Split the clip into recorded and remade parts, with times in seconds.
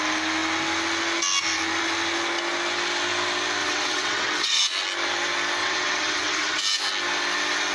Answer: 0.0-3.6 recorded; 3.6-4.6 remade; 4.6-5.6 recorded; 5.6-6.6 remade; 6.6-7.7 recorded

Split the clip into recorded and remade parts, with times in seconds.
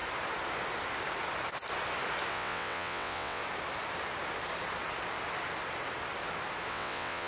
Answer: 0.0-2.3 recorded; 2.3-3.4 remade; 3.4-6.7 recorded; 6.7-7.3 remade